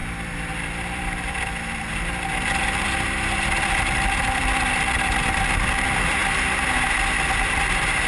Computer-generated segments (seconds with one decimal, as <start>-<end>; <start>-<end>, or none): 0.0-4.5